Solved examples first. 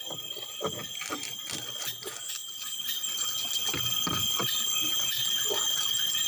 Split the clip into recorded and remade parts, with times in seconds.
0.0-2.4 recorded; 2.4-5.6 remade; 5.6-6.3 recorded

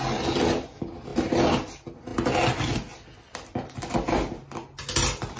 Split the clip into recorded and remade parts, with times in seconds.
0.0-5.4 recorded

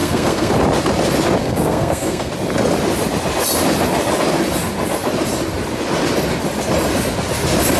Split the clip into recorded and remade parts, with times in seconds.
0.0-0.5 remade; 0.5-1.4 recorded; 1.4-2.3 remade; 2.3-7.8 recorded

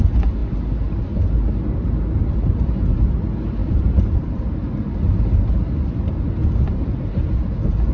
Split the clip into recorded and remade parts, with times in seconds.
0.0-3.6 recorded; 3.6-4.5 remade; 4.5-7.9 recorded